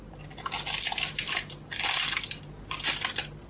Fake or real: real